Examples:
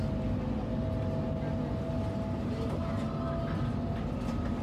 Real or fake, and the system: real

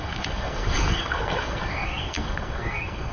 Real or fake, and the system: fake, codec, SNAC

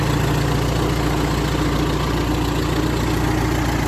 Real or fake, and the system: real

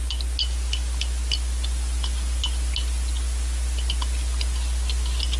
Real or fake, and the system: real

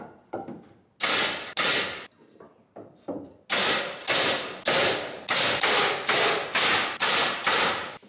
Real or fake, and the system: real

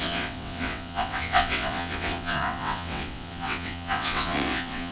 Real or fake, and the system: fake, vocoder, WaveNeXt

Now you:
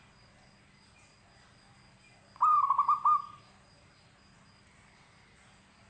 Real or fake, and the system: real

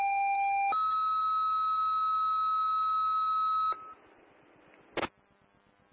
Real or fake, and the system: real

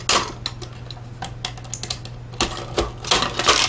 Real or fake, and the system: real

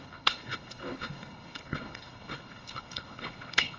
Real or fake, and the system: fake, codec, HILCodec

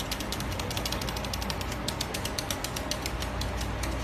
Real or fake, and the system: real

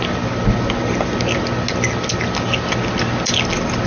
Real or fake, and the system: real